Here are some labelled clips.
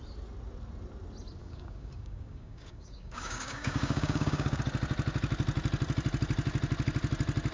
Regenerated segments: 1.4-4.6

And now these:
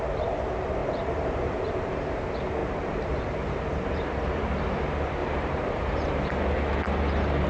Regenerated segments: 0.8-1.7; 2.6-4.5; 5.2-6.3

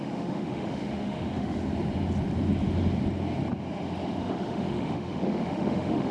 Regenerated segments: 0.0-1.6; 4.2-6.1